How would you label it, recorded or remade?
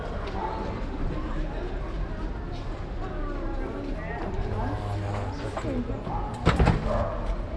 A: recorded